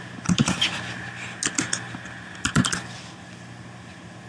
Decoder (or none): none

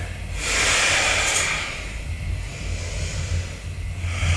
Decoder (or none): none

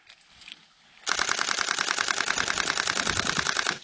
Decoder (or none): none